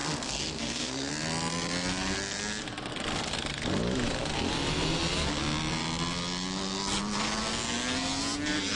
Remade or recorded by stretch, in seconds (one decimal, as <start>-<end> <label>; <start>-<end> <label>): 0.0-1.1 remade; 1.1-2.9 recorded; 2.9-3.8 remade; 3.8-8.8 recorded